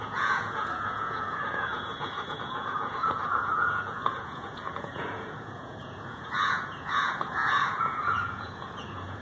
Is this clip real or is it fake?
fake